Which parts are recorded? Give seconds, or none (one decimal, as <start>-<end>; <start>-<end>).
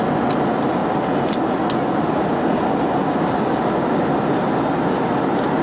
0.0-5.6